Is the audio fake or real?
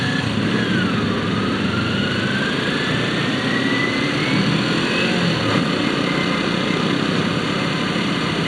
real